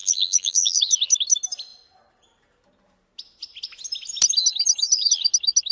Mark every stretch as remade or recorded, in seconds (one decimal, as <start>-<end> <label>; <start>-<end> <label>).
0.0-0.8 remade; 0.8-5.7 recorded